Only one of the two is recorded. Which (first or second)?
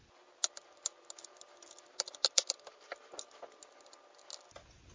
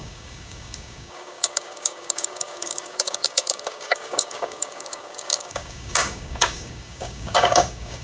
first